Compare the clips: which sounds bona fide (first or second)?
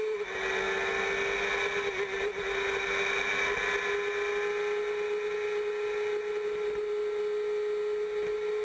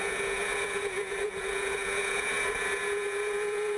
first